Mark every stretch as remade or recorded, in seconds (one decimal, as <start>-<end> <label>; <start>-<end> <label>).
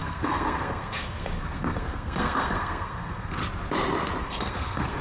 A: 0.0-3.4 remade; 3.4-4.2 recorded; 4.2-5.0 remade